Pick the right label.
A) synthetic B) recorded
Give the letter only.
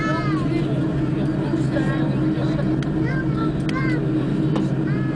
B